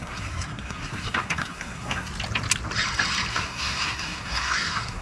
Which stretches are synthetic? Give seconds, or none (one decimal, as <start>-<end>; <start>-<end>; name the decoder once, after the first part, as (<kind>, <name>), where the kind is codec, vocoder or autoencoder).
0.0-2.1 (codec, SNAC); 3.3-5.0